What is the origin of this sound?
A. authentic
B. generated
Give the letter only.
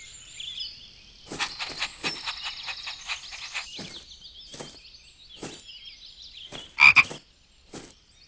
A